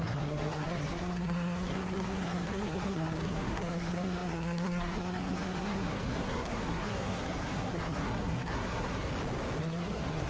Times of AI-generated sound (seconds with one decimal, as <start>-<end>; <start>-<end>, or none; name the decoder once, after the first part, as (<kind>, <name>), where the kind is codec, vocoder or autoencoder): 0.0-9.1 (codec, SNAC); 9.6-10.3